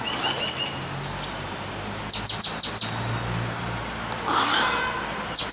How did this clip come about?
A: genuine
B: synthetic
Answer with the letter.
A